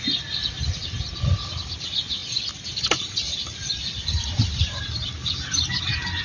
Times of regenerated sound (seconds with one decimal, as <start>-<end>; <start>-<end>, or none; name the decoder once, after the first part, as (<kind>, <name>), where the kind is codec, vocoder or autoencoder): none